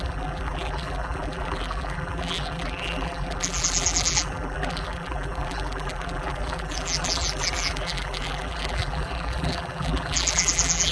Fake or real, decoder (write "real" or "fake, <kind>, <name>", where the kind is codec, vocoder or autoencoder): fake, vocoder, BigVGAN v2